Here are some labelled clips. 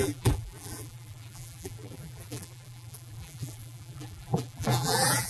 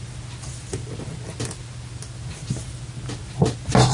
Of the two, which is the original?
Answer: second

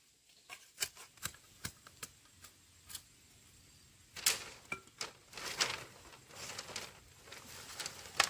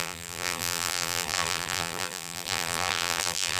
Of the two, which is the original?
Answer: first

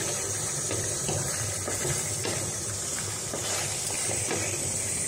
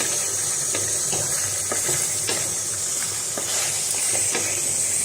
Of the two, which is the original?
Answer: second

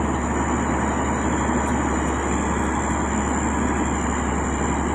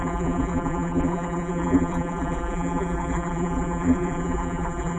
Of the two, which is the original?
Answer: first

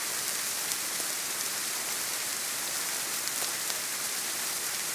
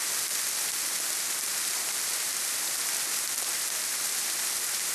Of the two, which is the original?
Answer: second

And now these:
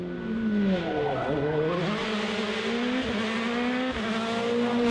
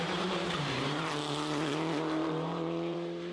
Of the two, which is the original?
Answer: first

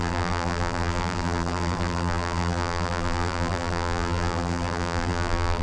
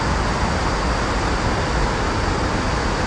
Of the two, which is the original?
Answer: second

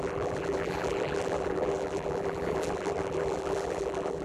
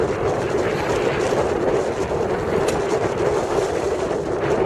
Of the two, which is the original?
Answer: second